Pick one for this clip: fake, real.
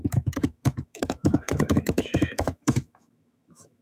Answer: fake